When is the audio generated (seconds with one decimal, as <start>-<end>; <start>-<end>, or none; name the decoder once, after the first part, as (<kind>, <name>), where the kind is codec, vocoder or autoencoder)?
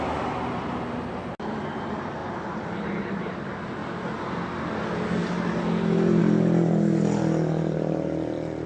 none